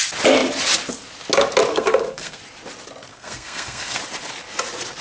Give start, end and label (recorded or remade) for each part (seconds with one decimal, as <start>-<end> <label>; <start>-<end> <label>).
0.0-1.7 recorded; 1.7-2.4 remade; 2.4-3.1 recorded; 3.1-4.0 remade; 4.0-5.0 recorded